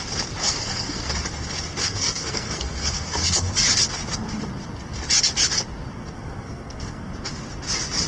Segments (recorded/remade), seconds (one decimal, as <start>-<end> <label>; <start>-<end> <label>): 0.0-0.4 recorded; 0.4-1.1 remade; 1.1-1.8 recorded; 1.8-3.5 remade; 3.5-6.0 recorded; 6.0-7.1 remade; 7.1-8.1 recorded